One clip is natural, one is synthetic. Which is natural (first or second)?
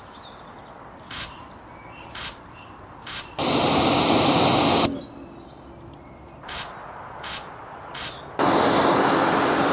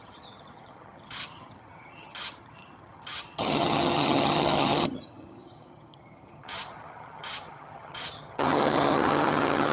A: first